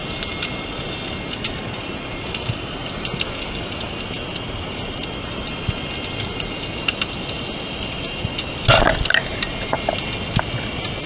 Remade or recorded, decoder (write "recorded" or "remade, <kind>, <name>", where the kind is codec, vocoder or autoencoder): recorded